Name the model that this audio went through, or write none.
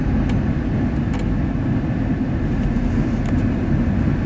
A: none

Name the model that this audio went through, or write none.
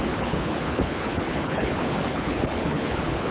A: codec, HILCodec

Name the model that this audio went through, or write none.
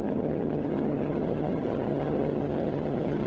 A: vocoder, HiFi-GAN